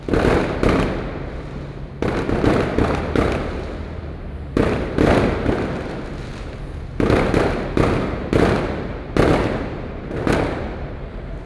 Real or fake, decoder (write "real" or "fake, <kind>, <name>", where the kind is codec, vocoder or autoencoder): real